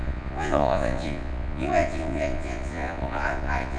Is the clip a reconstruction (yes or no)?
yes